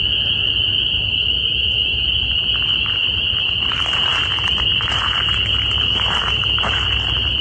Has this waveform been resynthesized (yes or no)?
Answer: no